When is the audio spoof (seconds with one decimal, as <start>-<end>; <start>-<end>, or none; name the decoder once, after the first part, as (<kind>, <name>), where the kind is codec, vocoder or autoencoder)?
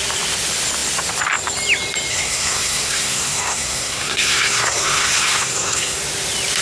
2.1-6.0 (codec, SNAC)